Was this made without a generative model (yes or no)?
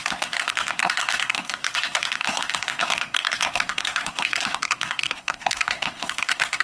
no